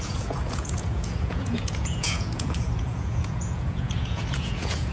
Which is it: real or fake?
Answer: fake